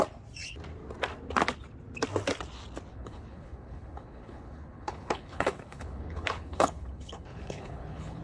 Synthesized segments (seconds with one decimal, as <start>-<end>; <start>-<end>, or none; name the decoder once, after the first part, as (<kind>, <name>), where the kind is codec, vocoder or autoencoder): 2.9-8.2 (codec, HILCodec)